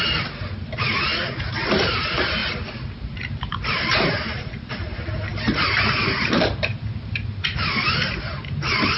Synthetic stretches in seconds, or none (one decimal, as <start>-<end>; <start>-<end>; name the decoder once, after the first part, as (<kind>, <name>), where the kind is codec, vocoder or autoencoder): 0.0-1.1 (vocoder, BigVGAN v2); 1.8-2.4; 3.0-9.0